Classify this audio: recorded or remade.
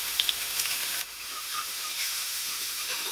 remade